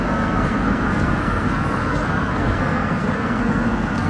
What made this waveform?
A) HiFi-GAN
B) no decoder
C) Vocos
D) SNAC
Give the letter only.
D